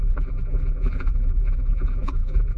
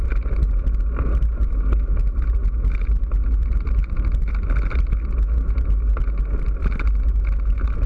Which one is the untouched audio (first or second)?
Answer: second